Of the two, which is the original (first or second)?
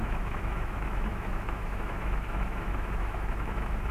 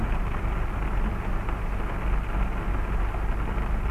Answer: second